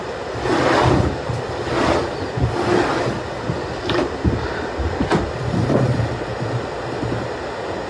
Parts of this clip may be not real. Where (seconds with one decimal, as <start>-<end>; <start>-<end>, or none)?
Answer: 0.5-2.0; 5.1-6.1